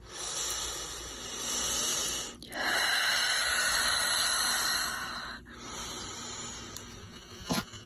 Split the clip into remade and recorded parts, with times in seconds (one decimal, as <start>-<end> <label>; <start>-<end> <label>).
0.0-7.0 recorded; 7.0-7.9 remade